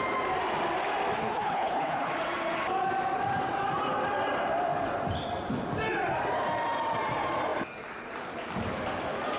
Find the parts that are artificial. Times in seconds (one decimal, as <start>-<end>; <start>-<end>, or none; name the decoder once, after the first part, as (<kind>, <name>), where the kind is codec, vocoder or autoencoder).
1.2-2.1 (codec, HILCodec)